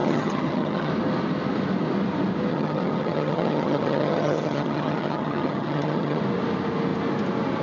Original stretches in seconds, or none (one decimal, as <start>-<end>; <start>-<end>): 0.9-2.5; 6.2-7.6